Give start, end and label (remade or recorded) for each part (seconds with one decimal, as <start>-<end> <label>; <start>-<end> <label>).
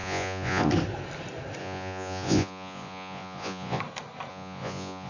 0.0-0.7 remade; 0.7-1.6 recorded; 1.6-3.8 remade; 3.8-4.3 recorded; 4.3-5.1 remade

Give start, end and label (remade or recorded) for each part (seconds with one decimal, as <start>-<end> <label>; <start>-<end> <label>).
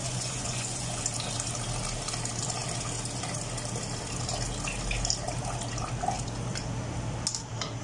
0.0-1.0 remade; 1.0-7.8 recorded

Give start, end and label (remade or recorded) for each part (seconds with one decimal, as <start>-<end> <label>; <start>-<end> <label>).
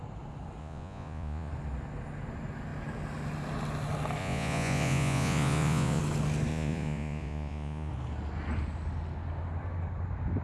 0.0-0.6 recorded; 0.6-1.5 remade; 1.5-4.2 recorded; 4.2-6.0 remade; 6.0-6.5 recorded; 6.5-7.9 remade; 7.9-10.4 recorded